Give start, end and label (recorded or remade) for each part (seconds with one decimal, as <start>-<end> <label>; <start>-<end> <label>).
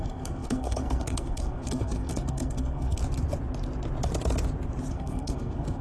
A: 0.0-3.0 remade; 3.0-4.9 recorded; 4.9-5.8 remade